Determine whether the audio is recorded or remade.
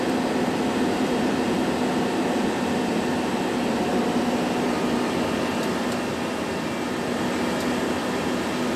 recorded